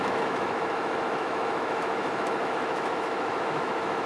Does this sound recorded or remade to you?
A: remade